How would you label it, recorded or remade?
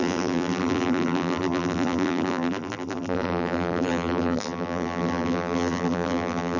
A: remade